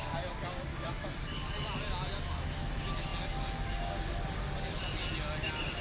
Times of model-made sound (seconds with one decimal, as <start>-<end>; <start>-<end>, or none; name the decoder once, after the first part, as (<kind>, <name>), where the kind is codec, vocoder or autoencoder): 0.7-1.2 (autoencoder, DAC-VAE)